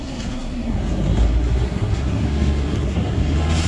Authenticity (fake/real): fake